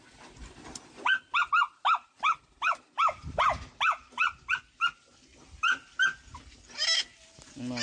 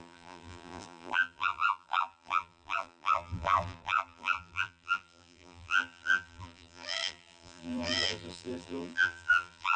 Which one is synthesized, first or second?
second